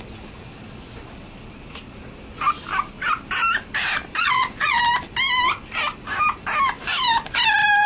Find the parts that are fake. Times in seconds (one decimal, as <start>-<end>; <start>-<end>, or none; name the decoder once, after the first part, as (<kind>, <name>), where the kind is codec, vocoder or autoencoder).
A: 4.2-4.8 (vocoder, Vocos)